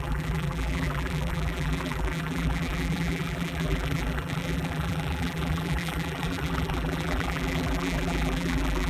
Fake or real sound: fake